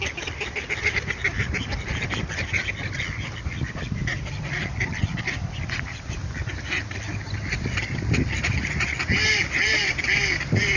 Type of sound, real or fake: fake